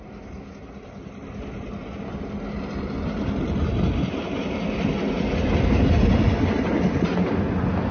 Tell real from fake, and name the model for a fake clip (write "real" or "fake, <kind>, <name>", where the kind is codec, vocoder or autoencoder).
real